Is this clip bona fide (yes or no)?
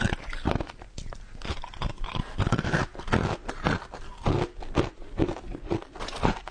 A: yes